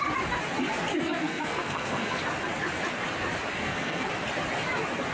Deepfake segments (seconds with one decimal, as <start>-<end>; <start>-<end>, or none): 0.9-2.2; 3.6-4.1